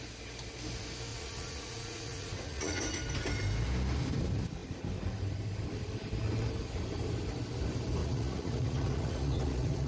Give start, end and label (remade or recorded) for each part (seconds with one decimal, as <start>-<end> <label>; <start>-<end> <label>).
0.0-1.1 recorded; 1.1-2.8 remade; 2.8-8.0 recorded; 8.0-9.9 remade